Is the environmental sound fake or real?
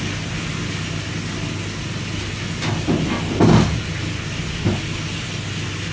real